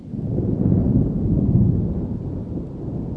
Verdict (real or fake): real